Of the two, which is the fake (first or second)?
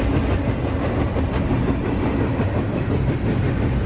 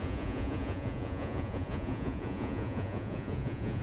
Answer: second